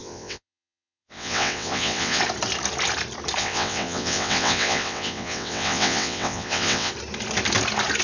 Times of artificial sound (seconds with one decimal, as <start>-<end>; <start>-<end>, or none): 0.0-2.2; 3.4-6.9